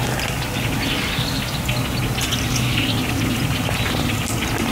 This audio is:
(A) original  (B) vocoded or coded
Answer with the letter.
A